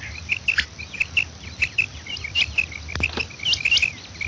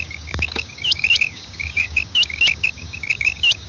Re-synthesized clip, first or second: second